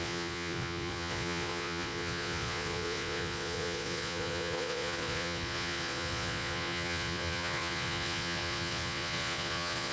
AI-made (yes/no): yes